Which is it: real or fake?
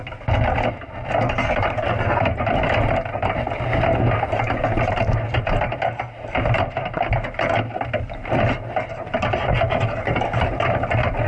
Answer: real